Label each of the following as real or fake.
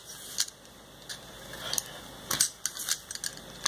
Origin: real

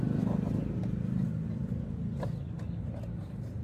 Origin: real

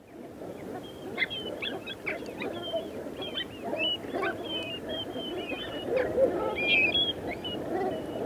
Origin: real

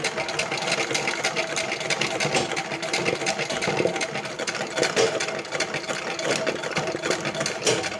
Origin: real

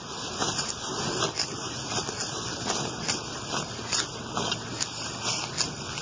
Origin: real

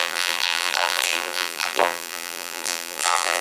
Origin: fake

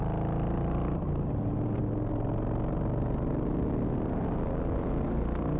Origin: real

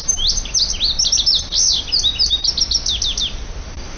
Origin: real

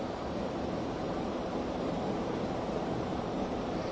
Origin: fake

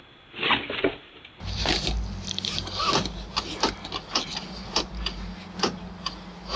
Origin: real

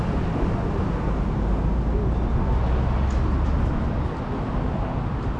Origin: real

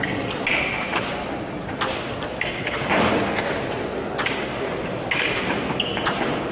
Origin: real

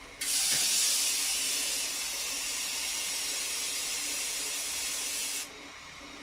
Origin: real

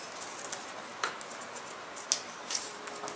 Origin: real